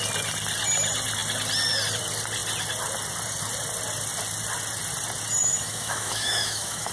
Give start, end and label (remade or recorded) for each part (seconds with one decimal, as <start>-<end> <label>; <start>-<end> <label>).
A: 0.0-5.4 recorded; 5.4-6.9 remade